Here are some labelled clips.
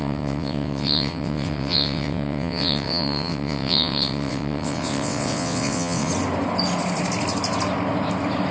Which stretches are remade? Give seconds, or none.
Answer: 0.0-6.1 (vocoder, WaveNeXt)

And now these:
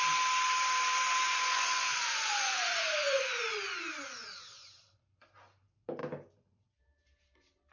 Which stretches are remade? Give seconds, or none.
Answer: 1.2-4.8 (vocoder, Vocos)

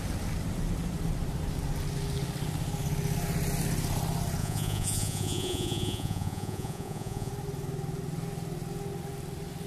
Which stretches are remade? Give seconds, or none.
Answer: 4.4-7.3 (vocoder, Vocos)

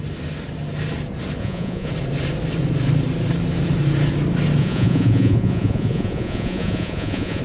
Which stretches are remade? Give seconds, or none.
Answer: 1.4-1.9 (vocoder, Vocos); 4.6-7.4